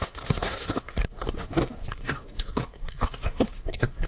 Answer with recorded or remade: remade